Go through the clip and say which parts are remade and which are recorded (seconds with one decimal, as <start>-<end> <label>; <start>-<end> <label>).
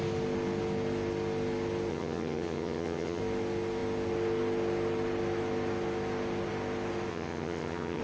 0.0-1.9 recorded; 1.9-3.2 remade; 3.2-7.1 recorded; 7.1-8.0 remade